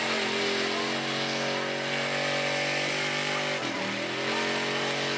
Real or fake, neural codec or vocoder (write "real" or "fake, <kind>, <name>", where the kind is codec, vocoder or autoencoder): real